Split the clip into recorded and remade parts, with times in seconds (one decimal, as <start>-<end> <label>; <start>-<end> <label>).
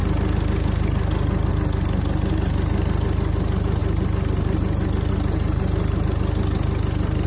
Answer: 0.0-7.3 recorded